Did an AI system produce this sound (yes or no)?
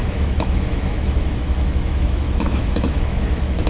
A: yes